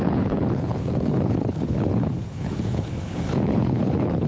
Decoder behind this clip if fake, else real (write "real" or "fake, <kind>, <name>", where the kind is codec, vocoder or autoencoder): fake, codec, HILCodec